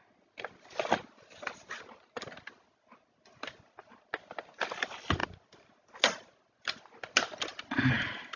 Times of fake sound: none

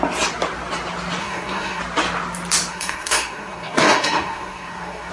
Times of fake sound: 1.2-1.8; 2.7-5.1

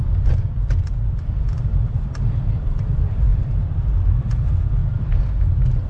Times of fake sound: none

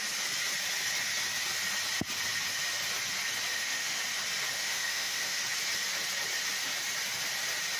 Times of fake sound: 3.5-4.0; 4.6-5.4

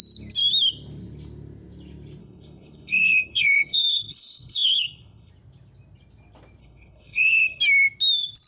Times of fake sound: 2.2-5.3; 6.6-7.6

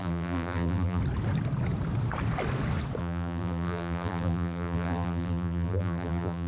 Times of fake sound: 0.0-1.0; 3.0-6.5